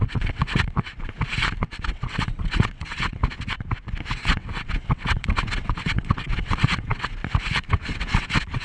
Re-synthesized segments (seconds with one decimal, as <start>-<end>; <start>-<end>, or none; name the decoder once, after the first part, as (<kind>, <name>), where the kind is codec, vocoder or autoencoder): 0.0-0.9 (vocoder, WaveNeXt); 1.6-3.2; 4.1-7.2; 7.7-8.6